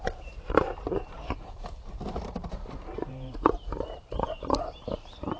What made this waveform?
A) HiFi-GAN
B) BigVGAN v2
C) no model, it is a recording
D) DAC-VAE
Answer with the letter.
B